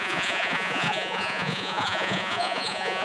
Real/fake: fake